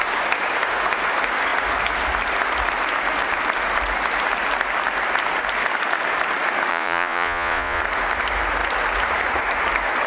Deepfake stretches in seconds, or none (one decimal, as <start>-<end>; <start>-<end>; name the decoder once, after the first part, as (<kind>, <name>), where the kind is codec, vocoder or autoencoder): 6.7-7.8 (vocoder, Vocos)

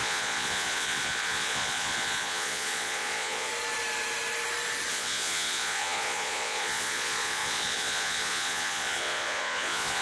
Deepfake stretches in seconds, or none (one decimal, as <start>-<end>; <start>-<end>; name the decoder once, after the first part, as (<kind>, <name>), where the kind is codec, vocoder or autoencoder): 0.0-3.5 (vocoder, Vocos); 4.9-10.0

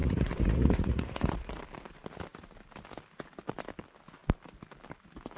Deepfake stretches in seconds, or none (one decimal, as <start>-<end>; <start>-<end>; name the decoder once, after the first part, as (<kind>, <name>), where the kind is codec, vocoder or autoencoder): 0.0-1.6 (vocoder, Vocos)

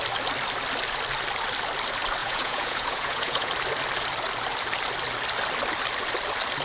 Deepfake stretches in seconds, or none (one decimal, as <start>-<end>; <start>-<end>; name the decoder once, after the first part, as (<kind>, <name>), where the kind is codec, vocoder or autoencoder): 2.2-3.5 (vocoder, Vocos)

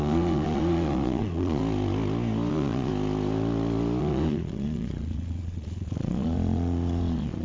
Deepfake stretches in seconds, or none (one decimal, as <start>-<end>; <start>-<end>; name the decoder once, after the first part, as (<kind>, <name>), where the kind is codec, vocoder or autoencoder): 0.0-1.6 (vocoder, Vocos); 2.5-2.9; 4.0-7.4

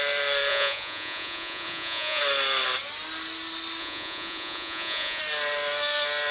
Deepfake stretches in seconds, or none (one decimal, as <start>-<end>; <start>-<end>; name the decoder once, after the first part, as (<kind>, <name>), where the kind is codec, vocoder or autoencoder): 0.5-2.2 (vocoder, Vocos); 3.8-5.2